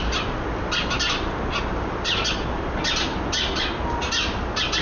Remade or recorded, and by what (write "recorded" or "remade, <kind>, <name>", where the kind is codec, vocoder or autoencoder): recorded